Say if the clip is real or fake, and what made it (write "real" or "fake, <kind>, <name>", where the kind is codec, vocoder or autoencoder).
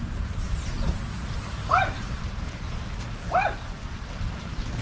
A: fake, vocoder, BigVGAN v2